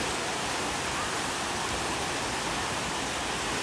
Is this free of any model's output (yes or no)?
yes